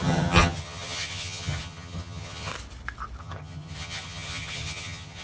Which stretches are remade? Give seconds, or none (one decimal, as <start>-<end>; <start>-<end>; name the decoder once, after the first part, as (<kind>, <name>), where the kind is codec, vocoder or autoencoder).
0.0-2.5 (vocoder, HiFi-GAN); 3.2-5.2

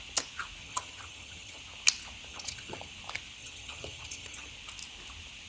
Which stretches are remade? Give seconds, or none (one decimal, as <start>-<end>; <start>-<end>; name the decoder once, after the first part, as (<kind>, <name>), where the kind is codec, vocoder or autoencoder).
0.6-1.6 (vocoder, HiFi-GAN); 2.3-2.9; 3.4-4.5

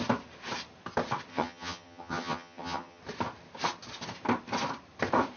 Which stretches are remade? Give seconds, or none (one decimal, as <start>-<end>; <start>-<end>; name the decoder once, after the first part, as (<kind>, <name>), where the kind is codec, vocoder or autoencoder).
1.3-3.0 (vocoder, HiFi-GAN)

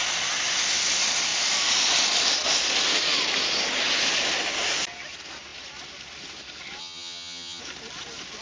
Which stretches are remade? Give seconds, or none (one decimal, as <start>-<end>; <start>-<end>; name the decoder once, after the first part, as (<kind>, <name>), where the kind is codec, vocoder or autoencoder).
6.8-7.6 (vocoder, HiFi-GAN)

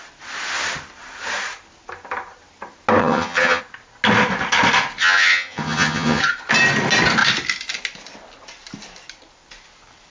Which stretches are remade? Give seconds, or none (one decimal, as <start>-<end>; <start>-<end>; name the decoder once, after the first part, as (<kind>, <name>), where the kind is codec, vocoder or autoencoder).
3.0-3.6 (vocoder, HiFi-GAN); 5.0-6.2